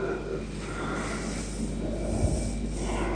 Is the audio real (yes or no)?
yes